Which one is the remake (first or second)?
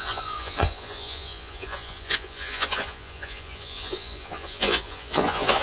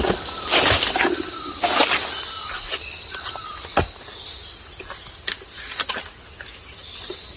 first